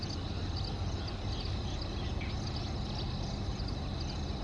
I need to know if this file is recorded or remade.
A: recorded